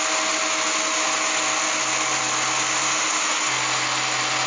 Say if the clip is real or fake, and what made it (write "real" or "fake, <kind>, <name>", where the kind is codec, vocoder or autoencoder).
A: real